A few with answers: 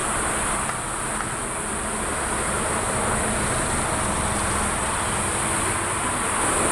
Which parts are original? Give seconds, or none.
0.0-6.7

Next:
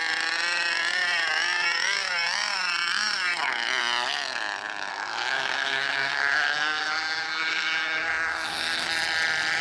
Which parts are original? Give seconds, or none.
0.0-4.9; 8.9-9.6

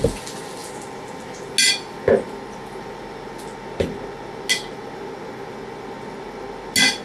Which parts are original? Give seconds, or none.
0.0-7.0

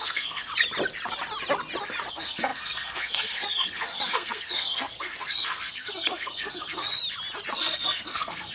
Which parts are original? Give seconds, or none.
0.5-2.1; 7.0-7.5

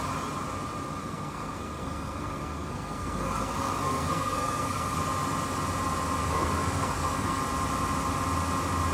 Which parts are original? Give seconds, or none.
0.0-1.0; 5.0-6.2; 7.4-8.9